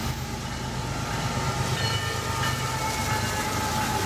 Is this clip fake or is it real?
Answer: real